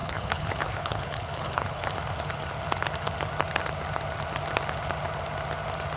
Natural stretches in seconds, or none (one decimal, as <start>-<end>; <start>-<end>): 1.8-6.0